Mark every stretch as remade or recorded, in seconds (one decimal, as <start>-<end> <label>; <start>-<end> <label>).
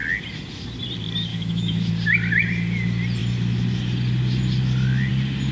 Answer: 0.0-1.3 recorded; 1.3-1.9 remade; 1.9-5.5 recorded